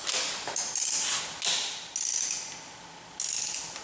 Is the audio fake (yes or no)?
no